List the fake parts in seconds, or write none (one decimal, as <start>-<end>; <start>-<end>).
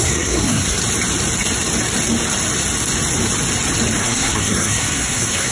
0.0-0.8; 4.0-5.5